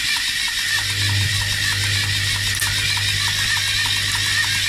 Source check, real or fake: real